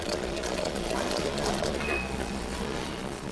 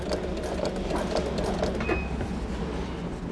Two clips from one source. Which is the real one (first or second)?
second